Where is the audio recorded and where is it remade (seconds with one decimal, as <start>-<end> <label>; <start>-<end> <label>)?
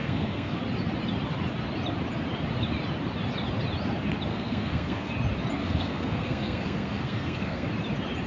0.0-0.6 remade; 0.6-4.3 recorded; 4.3-5.1 remade; 5.1-5.6 recorded; 5.6-7.7 remade; 7.7-8.3 recorded